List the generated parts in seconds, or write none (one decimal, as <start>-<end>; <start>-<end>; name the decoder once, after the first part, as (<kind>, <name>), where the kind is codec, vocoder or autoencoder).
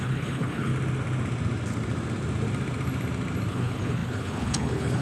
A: 0.0-0.7 (codec, HILCodec); 3.5-5.0